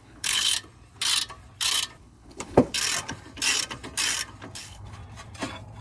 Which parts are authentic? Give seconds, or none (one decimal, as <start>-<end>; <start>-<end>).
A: 0.5-2.0; 2.7-4.6; 5.0-5.8